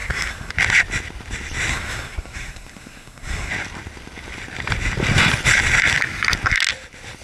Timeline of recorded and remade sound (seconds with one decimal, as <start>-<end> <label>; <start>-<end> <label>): 0.0-0.5 remade; 0.5-1.7 recorded; 1.7-3.5 remade; 3.5-7.2 recorded

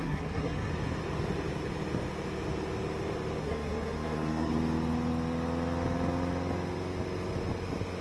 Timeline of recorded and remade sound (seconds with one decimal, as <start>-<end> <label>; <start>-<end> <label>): 0.0-0.7 remade; 0.7-3.4 recorded; 3.4-4.5 remade; 4.5-8.0 recorded

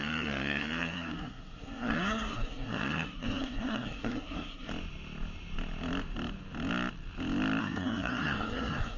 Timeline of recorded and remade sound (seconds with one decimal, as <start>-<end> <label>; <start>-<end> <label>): 0.0-4.7 remade; 4.7-7.6 recorded; 7.6-9.0 remade

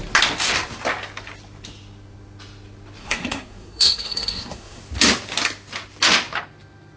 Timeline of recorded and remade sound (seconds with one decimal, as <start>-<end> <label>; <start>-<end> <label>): 0.0-3.0 recorded; 3.0-4.8 remade; 4.8-7.0 recorded

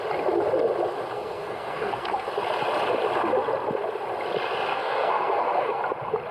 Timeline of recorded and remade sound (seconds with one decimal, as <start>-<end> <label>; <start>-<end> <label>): 0.0-1.1 recorded; 1.1-2.3 remade; 2.3-4.7 recorded; 4.7-5.8 remade; 5.8-6.3 recorded

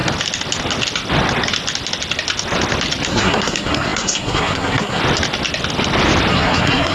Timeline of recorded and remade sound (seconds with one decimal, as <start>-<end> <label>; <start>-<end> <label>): 0.0-3.1 recorded; 3.1-5.0 remade; 5.0-6.3 recorded; 6.3-6.9 remade